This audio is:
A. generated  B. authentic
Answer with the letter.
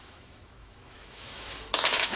A